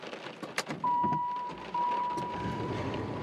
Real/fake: fake